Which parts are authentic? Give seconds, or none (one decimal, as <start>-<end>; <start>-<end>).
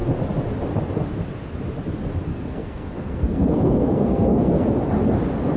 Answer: 0.0-2.3; 4.7-5.6